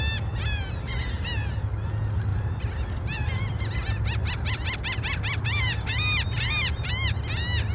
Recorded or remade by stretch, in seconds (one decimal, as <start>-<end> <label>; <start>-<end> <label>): 0.0-2.3 recorded; 2.3-6.9 remade; 6.9-7.7 recorded

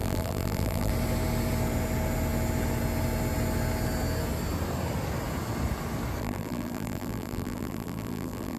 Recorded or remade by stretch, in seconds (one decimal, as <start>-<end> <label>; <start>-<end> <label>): 0.0-0.9 remade; 0.9-6.2 recorded; 6.2-8.6 remade